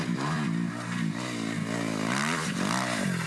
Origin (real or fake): real